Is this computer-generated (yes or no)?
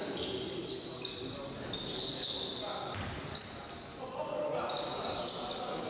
no